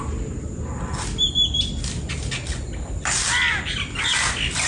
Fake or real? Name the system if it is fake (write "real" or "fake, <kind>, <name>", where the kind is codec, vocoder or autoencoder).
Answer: real